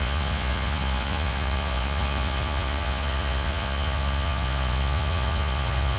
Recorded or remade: remade